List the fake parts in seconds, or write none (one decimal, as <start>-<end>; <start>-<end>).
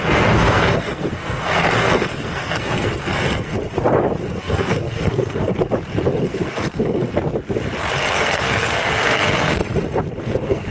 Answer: 0.0-3.5; 4.3-5.5; 6.2-7.0; 8.1-9.6; 10.2-10.7